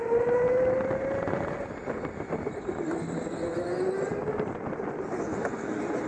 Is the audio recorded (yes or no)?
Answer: yes